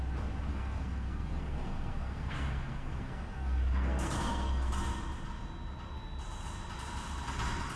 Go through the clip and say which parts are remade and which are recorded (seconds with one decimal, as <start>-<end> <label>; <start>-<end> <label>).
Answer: 0.0-0.5 recorded; 0.5-4.7 remade; 4.7-7.8 recorded